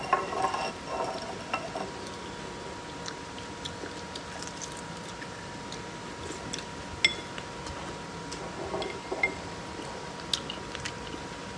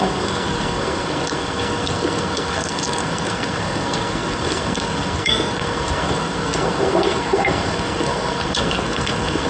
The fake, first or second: second